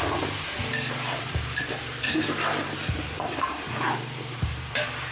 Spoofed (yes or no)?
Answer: yes